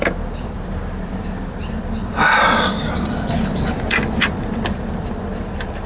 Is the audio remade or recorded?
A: remade